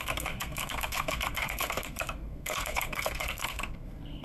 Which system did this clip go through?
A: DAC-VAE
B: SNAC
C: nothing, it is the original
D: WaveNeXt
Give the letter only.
B